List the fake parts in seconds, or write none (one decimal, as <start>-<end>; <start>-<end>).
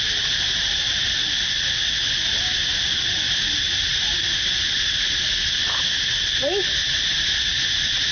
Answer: none